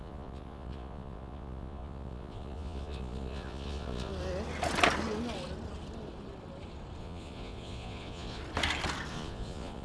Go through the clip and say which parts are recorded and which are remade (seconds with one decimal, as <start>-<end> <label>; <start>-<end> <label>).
0.0-4.1 remade; 4.1-7.0 recorded; 7.0-8.4 remade; 8.4-9.1 recorded; 9.1-9.8 remade